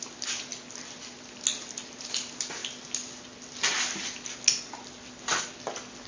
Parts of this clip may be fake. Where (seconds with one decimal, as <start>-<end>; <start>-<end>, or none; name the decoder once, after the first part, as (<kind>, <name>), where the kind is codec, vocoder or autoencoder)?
none